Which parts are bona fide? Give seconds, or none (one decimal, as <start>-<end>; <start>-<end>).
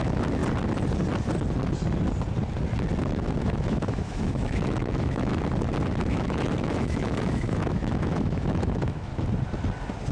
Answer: 0.4-3.4; 5.3-6.0; 9.1-10.1